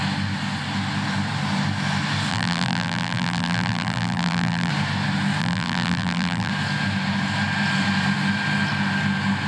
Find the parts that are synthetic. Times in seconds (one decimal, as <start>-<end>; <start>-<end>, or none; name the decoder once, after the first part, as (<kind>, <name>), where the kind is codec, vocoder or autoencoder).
2.3-4.7 (vocoder, BigVGAN v2); 5.4-6.5